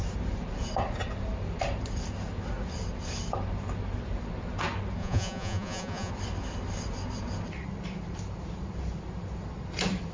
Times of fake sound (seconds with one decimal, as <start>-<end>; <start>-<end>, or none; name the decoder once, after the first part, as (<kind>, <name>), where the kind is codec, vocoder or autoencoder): 5.0-6.1 (vocoder, Vocos)